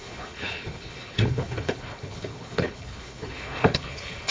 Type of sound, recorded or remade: remade